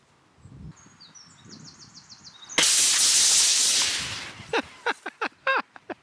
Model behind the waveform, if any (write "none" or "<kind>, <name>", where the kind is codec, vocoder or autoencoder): none